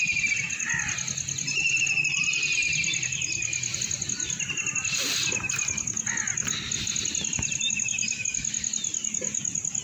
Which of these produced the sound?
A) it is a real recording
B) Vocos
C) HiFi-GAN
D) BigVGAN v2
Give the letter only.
A